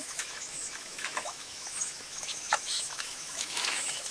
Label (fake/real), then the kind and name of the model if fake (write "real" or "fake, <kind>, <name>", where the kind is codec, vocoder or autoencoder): fake, autoencoder, DAC-VAE